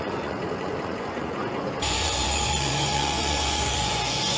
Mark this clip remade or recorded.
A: remade